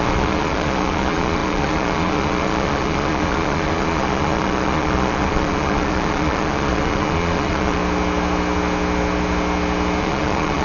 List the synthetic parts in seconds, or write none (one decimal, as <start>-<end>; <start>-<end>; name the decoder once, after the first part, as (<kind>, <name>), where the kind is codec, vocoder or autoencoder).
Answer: 0.0-7.8 (vocoder, Vocos); 10.0-10.6